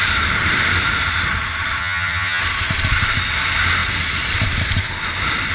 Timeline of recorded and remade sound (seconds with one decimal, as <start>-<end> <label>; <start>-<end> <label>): 0.0-1.8 recorded; 1.8-2.4 remade; 2.4-5.5 recorded